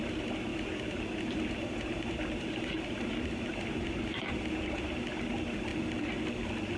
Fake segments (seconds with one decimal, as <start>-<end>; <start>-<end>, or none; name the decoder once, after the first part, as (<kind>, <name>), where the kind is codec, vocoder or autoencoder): 0.5-4.3 (vocoder, BigVGAN v2)

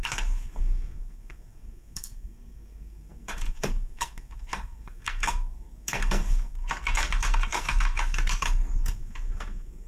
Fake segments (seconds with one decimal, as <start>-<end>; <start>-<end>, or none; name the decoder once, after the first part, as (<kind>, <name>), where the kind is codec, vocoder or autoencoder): 0.0-9.9 (codec, SNAC)

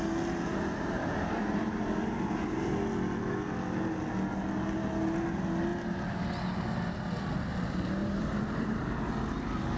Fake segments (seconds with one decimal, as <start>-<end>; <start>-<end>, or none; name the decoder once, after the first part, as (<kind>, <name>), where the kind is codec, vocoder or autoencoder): 0.5-2.7 (vocoder, BigVGAN v2); 5.7-6.2; 8.0-9.1